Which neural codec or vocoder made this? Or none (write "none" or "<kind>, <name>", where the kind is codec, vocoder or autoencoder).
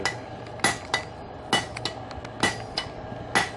none